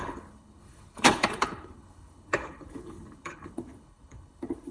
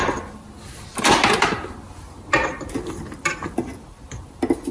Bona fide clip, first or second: second